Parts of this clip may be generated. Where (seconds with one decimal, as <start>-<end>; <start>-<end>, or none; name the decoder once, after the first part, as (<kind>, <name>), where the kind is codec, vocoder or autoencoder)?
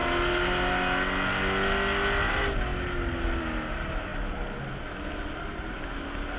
none